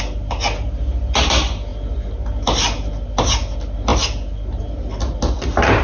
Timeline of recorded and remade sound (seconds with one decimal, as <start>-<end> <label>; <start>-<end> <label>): 0.0-5.8 recorded